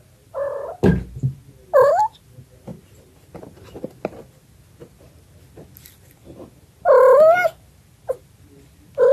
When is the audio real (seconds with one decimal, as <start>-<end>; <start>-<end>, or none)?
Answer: 0.0-9.1